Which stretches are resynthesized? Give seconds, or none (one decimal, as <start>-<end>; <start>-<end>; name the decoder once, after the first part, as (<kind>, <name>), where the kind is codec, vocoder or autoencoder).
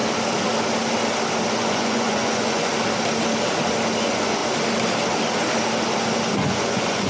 1.5-2.7 (vocoder, Vocos); 4.0-4.4; 6.3-7.1